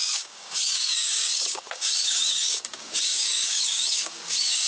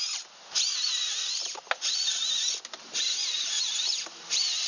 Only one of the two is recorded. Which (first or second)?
second